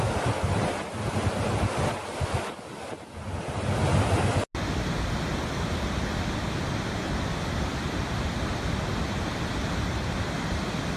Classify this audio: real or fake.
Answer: real